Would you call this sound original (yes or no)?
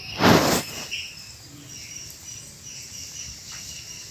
yes